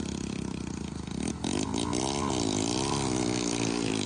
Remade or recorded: recorded